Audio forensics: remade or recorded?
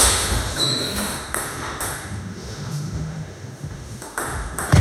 remade